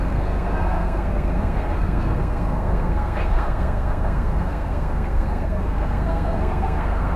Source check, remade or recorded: remade